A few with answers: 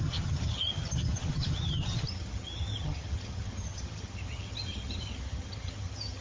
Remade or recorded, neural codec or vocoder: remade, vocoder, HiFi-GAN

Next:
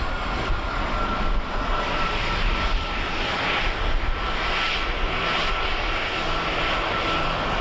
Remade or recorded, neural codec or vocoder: recorded